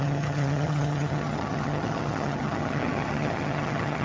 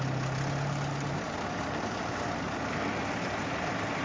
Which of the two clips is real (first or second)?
second